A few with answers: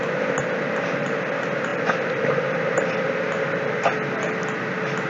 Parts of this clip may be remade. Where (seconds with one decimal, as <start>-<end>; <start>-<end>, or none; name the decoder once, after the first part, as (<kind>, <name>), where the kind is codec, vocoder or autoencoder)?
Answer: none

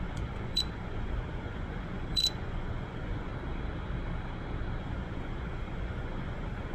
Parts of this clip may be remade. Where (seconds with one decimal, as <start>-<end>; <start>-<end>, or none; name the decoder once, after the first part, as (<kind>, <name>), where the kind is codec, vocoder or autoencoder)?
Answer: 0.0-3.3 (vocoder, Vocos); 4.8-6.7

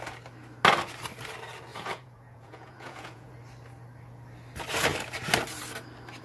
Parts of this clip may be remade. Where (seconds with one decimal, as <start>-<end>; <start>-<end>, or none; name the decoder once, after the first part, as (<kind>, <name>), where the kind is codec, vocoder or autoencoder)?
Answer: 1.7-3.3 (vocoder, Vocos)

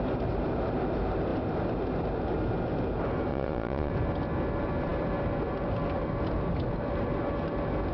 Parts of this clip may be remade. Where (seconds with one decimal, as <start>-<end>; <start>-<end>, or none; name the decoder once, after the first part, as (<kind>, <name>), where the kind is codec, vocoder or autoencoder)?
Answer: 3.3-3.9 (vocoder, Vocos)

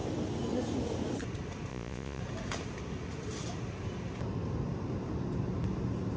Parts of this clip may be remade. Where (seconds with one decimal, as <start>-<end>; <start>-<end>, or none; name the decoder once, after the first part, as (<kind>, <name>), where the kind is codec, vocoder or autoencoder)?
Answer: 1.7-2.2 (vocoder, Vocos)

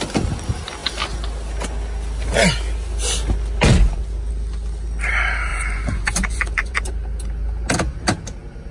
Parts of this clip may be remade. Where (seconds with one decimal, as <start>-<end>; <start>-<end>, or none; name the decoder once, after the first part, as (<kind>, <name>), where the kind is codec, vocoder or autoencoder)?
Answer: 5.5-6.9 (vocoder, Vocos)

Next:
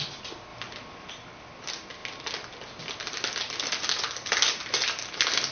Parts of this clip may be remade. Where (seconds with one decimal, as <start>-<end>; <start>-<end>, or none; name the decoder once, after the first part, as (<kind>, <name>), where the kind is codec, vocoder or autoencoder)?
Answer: none